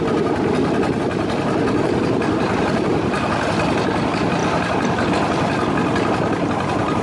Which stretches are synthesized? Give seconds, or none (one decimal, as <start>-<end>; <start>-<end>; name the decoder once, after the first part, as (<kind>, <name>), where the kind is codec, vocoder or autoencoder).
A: 4.4-5.1 (vocoder, BigVGAN v2)